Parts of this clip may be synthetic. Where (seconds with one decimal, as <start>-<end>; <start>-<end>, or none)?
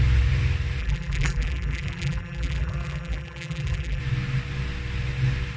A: 0.8-4.0